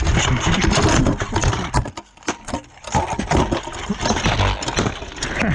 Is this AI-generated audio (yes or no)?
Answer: no